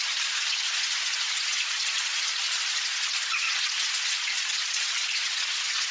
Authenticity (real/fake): fake